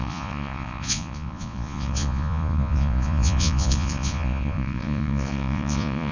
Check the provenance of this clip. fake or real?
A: fake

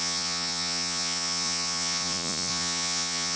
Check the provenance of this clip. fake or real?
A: fake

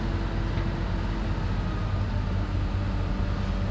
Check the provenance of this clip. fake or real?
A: real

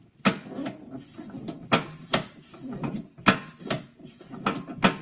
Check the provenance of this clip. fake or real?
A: real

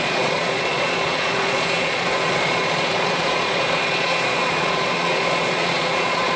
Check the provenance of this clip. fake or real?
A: fake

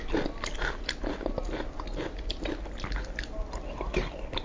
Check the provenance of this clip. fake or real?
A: real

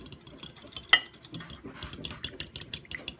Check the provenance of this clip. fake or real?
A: real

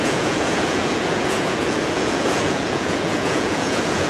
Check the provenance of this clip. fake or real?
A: fake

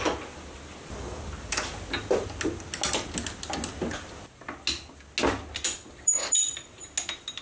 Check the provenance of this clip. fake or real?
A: real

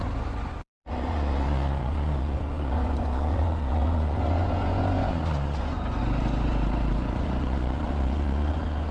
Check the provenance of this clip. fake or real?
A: fake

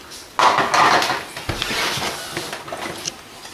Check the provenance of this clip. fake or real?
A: real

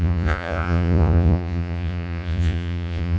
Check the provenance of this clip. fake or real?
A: fake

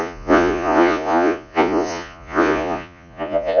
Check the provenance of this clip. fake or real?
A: fake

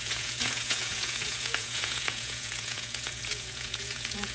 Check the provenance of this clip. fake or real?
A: fake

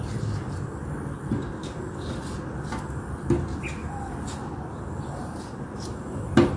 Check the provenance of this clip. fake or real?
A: real